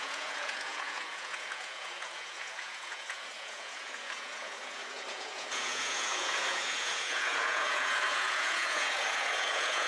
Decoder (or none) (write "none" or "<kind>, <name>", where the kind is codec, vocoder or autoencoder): vocoder, Vocos